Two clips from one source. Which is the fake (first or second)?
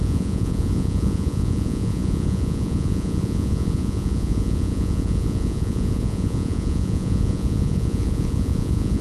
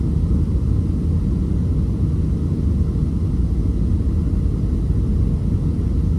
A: first